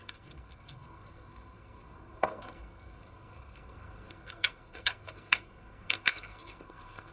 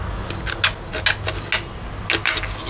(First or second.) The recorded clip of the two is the second